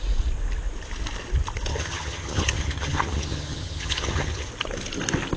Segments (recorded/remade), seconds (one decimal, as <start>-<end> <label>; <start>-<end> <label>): 0.0-1.7 recorded; 1.7-4.5 remade; 4.5-5.4 recorded